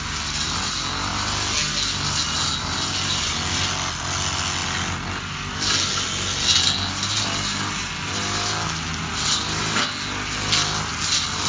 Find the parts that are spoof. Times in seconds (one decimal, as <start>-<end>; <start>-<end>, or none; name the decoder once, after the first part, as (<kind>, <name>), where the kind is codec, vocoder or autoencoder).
none

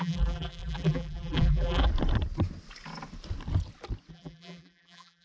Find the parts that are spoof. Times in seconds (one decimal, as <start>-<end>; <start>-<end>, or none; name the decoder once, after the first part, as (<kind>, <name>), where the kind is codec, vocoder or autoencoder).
0.0-1.9 (vocoder, BigVGAN v2); 4.1-5.2

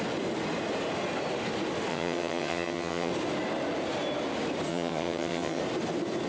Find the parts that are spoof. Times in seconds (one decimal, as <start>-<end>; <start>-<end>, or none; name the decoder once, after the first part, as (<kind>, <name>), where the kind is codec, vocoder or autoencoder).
1.9-3.1 (vocoder, HiFi-GAN); 4.7-5.6

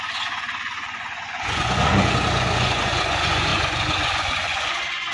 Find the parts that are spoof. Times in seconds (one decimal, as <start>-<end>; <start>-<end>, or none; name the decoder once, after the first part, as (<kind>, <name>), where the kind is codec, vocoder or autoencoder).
0.0-5.1 (vocoder, Vocos)

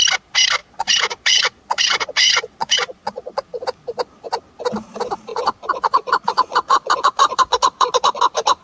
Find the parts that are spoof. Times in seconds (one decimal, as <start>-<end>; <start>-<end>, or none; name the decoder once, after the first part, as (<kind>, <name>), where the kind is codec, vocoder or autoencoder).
0.6-3.6 (vocoder, Vocos); 5.3-8.2

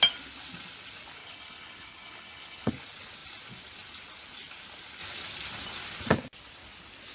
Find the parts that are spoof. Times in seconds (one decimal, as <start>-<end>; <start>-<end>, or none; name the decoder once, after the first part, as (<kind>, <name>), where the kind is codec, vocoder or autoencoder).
1.2-2.7 (codec, HILCodec)